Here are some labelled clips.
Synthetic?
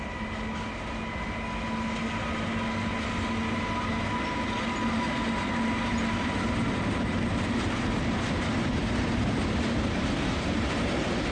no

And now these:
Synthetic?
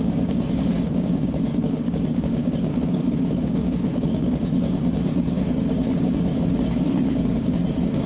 yes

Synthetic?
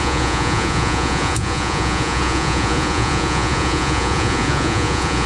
yes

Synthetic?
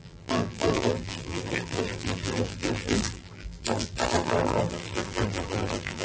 yes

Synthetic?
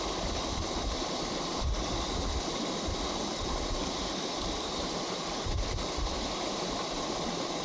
no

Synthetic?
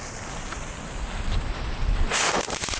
no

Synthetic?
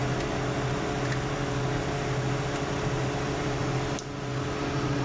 no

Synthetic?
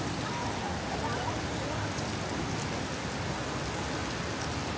no